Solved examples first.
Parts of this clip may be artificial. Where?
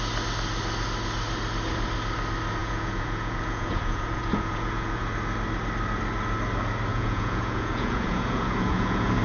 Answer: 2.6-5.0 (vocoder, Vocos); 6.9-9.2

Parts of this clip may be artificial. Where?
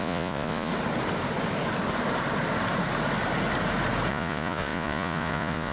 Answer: 0.0-0.7 (vocoder, Vocos); 4.1-5.7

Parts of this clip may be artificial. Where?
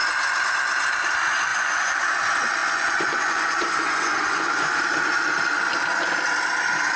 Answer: 1.5-2.0 (vocoder, Vocos); 2.6-4.8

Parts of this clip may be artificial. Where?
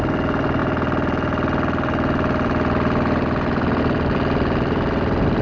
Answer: none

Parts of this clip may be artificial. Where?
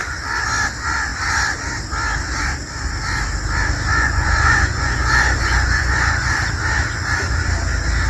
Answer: 3.9-6.3 (vocoder, Vocos)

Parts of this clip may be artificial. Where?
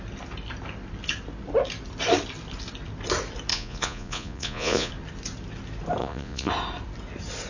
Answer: 3.5-4.9 (vocoder, Vocos); 6.0-6.5